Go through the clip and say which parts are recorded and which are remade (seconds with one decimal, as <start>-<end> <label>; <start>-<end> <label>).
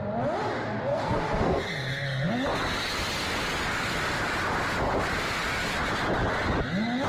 0.0-0.9 recorded; 0.9-2.3 remade; 2.3-7.1 recorded